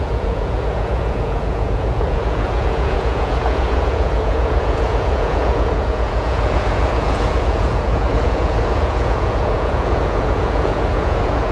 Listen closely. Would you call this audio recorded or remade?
remade